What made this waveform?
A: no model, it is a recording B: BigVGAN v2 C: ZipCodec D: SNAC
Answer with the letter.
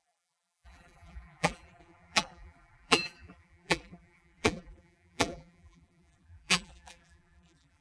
B